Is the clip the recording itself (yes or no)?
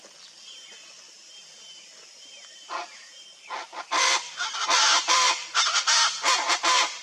yes